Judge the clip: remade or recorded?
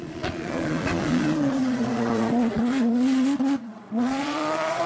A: remade